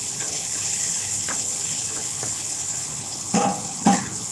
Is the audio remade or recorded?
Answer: remade